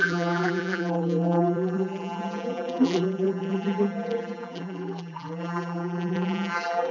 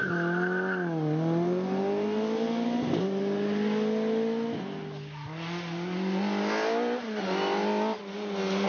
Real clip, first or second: second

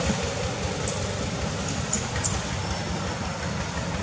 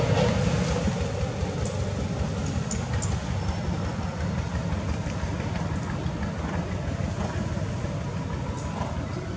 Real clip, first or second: second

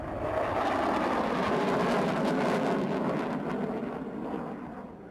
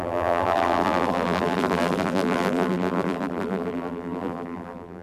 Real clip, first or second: first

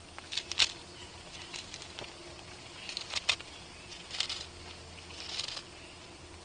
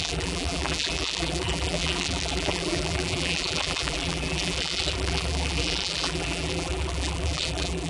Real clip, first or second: first